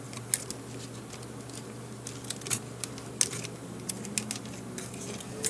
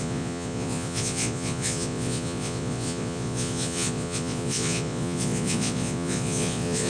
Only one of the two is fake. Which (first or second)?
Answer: second